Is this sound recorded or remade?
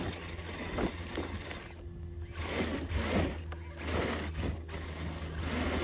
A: recorded